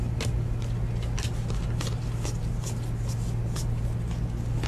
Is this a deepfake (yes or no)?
no